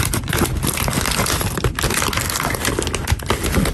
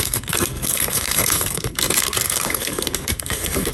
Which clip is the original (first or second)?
first